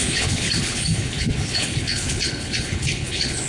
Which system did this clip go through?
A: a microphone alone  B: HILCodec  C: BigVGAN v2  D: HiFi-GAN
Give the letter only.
B